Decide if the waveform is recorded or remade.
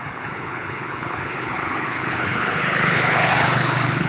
remade